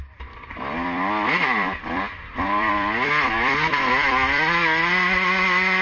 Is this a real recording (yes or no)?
no